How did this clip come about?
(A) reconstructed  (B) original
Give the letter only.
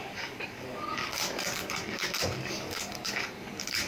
A